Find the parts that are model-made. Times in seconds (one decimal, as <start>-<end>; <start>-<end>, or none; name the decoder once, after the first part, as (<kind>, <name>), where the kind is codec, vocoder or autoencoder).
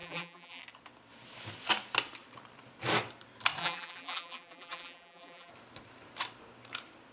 0.0-0.6 (vocoder, BigVGAN v2); 3.6-5.5